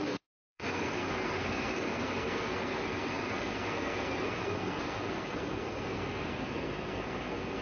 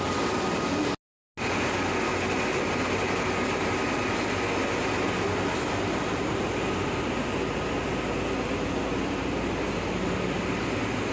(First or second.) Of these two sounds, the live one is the second